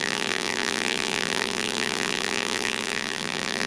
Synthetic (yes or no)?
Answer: yes